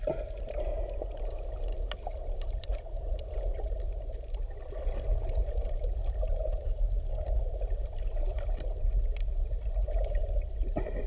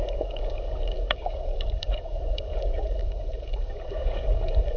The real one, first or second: first